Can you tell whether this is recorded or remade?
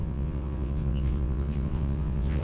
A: remade